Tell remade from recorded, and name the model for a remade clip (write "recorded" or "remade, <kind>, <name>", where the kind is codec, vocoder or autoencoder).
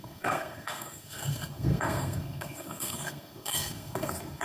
remade, codec, SNAC